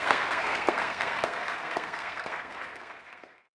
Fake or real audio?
fake